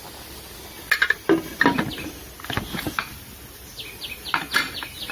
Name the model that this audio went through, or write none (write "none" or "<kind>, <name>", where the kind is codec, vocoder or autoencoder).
none